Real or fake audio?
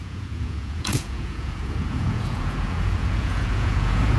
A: fake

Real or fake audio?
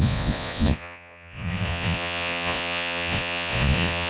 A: fake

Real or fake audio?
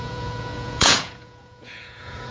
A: fake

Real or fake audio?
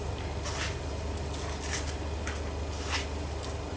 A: real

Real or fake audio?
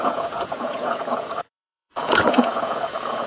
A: fake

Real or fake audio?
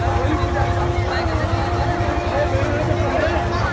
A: real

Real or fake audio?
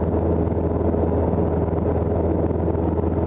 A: real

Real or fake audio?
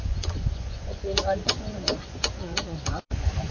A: fake